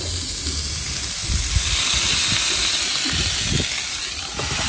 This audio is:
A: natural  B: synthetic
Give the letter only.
A